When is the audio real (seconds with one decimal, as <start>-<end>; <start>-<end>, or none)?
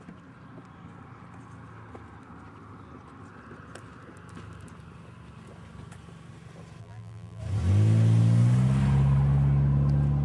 0.0-6.8; 7.4-10.2